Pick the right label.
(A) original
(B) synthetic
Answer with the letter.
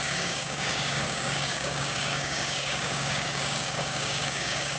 B